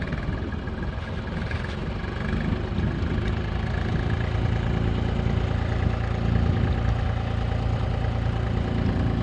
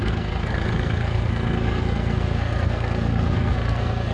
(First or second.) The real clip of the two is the first